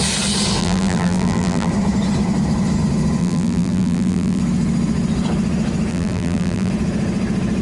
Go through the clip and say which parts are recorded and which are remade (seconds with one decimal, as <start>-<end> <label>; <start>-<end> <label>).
0.0-0.6 recorded; 0.6-1.7 remade; 1.7-3.2 recorded; 3.2-4.4 remade; 4.4-5.9 recorded; 5.9-6.7 remade; 6.7-7.6 recorded